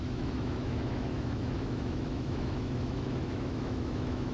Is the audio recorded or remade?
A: remade